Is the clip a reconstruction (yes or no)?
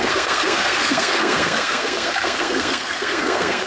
yes